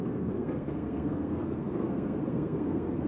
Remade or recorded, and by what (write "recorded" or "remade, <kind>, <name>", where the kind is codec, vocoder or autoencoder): remade, codec, SNAC